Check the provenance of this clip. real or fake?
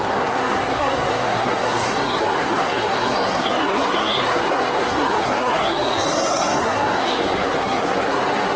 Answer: fake